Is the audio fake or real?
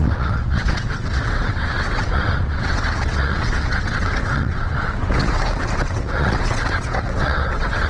fake